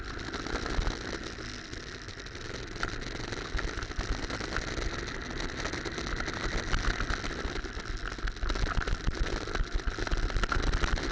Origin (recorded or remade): recorded